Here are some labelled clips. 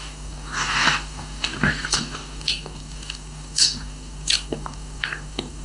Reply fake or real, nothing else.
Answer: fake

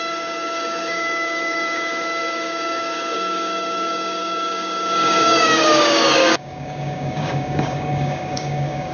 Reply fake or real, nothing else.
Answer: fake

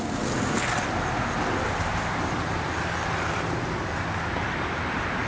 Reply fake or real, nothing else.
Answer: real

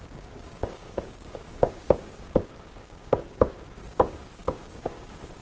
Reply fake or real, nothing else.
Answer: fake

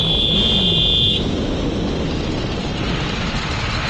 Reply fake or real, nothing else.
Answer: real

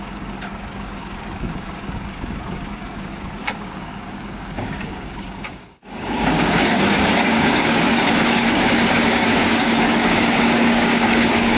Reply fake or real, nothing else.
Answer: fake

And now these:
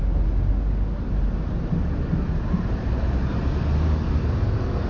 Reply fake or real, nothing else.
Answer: real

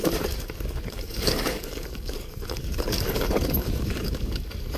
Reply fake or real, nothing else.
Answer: fake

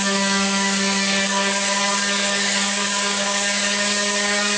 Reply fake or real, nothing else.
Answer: fake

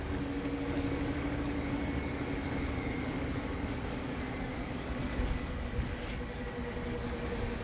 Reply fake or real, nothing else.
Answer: fake